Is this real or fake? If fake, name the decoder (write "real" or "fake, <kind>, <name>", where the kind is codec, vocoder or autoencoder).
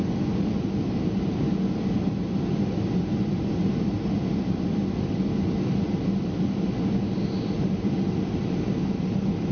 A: real